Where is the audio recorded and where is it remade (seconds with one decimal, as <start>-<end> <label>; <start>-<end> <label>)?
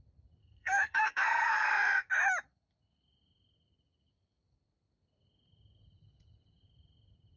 0.0-0.4 recorded; 0.4-2.1 remade; 2.1-7.4 recorded